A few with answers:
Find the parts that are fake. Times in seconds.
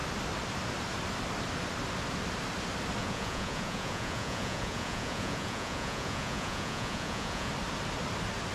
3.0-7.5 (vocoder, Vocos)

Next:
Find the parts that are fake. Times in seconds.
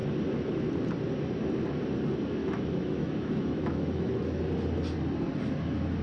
2.4-4.4 (autoencoder, DAC-VAE)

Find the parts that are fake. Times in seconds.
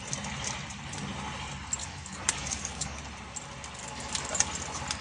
1.8-3.0 (codec, DAC); 3.8-4.3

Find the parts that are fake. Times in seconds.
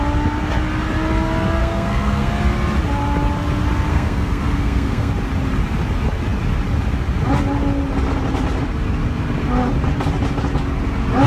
1.6-2.3 (codec, SNAC); 3.9-5.1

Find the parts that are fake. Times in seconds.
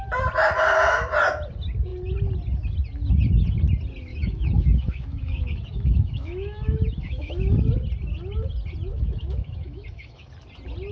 4.1-7.4 (autoencoder, DAC-VAE); 8.9-10.3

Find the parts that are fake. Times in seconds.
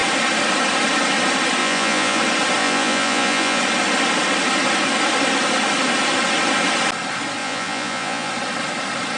1.6-2.2 (vocoder, Vocos); 2.6-3.6; 7.4-8.3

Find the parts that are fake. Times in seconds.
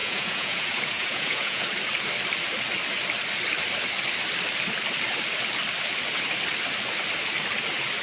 0.0-1.6 (vocoder, Vocos)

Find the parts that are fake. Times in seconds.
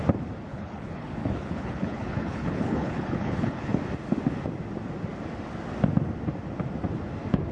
0.5-3.8 (codec, HILCodec)